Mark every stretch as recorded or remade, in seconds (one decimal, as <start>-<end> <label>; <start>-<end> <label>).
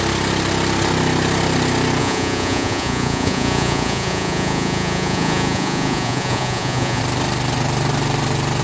0.0-2.0 recorded; 2.0-7.0 remade; 7.0-8.6 recorded